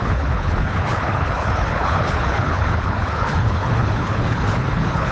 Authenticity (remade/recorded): remade